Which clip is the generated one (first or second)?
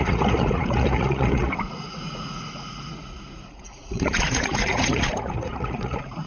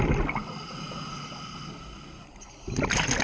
first